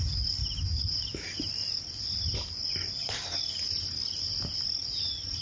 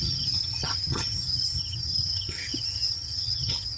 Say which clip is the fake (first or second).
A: second